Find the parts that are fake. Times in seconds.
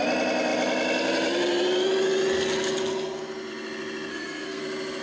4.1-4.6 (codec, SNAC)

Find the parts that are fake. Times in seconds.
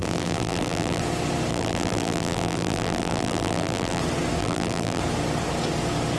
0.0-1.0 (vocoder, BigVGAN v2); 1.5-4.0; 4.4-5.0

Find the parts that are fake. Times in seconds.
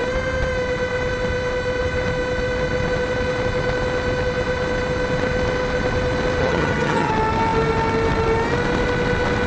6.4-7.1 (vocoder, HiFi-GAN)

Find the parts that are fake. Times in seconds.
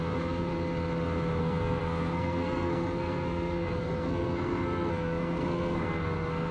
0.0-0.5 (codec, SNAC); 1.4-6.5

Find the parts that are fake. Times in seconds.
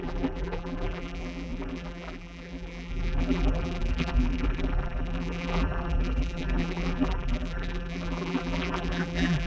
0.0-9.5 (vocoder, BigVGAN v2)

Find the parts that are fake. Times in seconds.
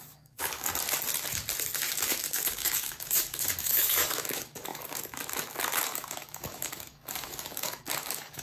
0.0-0.7 (codec, DAC); 1.9-8.4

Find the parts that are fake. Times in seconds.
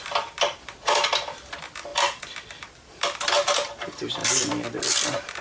0.0-5.4 (vocoder, BigVGAN v2)